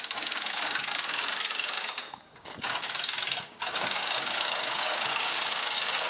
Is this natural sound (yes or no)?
no